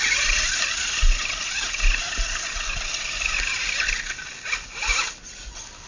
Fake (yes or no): no